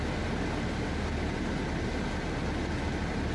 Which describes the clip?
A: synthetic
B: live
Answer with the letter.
B